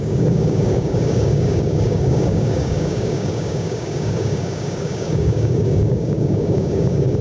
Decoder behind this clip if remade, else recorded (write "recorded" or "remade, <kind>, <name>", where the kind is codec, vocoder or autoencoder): remade, codec, DAC